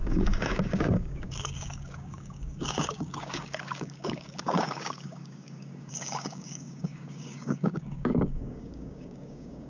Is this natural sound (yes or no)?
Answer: no